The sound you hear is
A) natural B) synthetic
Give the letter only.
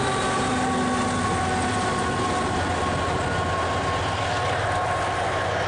A